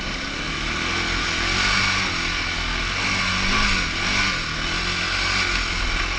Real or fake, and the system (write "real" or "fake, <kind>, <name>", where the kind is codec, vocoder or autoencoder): real